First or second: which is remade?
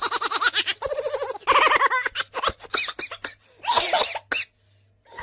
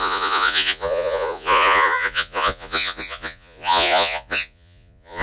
second